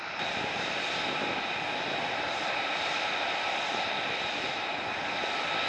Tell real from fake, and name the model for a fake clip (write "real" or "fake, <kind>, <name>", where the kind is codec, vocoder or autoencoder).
real